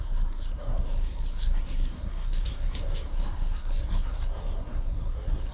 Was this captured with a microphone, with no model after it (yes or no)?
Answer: no